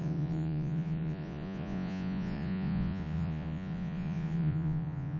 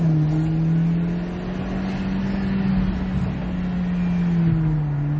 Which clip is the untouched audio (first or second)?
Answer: second